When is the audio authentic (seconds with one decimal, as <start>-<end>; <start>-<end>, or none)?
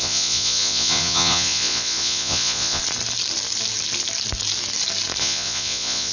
2.8-5.2